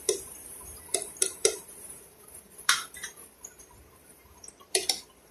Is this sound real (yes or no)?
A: no